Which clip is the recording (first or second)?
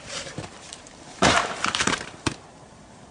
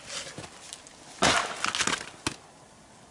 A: second